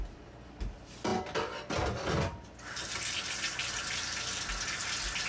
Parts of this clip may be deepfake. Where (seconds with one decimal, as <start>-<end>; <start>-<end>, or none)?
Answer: none